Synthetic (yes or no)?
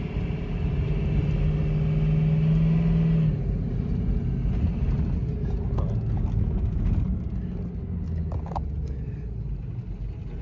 no